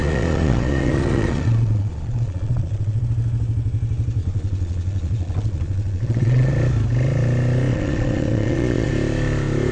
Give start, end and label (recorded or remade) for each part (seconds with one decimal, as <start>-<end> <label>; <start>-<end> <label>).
0.0-3.0 remade; 3.0-4.2 recorded; 4.2-6.5 remade; 6.5-7.7 recorded; 7.7-8.9 remade; 8.9-9.7 recorded